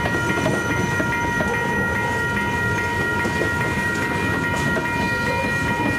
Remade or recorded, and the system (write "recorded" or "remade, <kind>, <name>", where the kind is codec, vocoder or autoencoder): recorded